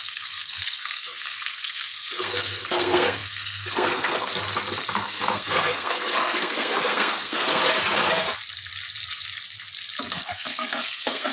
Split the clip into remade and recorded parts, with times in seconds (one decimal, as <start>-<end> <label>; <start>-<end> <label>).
0.0-4.3 remade; 4.3-4.9 recorded; 4.9-7.6 remade; 7.6-10.1 recorded; 10.1-11.3 remade